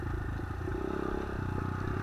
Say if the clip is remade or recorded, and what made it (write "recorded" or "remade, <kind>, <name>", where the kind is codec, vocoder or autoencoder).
recorded